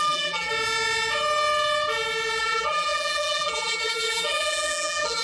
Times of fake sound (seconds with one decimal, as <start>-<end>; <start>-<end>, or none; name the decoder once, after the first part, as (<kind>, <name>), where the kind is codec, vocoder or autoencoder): 0.0-0.5 (vocoder, BigVGAN v2); 2.4-5.2